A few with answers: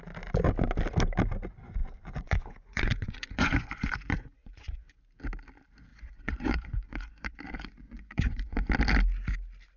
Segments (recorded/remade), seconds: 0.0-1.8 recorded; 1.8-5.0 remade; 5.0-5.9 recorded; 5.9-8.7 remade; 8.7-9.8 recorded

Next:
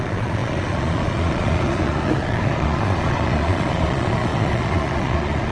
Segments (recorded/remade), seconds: 0.0-5.5 remade

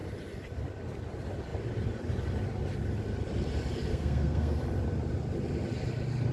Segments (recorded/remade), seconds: 0.0-3.9 recorded; 3.9-4.6 remade; 4.6-6.3 recorded

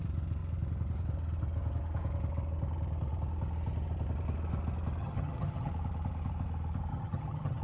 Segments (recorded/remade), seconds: 0.0-5.0 recorded; 5.0-5.7 remade; 5.7-6.9 recorded; 6.9-7.6 remade

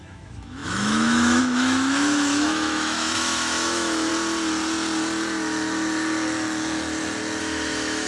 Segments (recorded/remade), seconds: 0.0-4.1 remade; 4.1-7.4 recorded; 7.4-8.1 remade

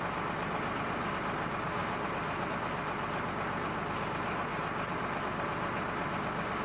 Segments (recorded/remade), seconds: 0.0-1.8 recorded; 1.8-2.5 remade; 2.5-6.6 recorded

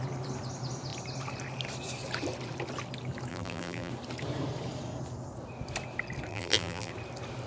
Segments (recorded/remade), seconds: 0.0-3.3 recorded; 3.3-3.9 remade; 3.9-6.3 recorded; 6.3-6.9 remade; 6.9-7.5 recorded